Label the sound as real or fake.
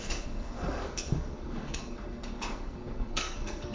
fake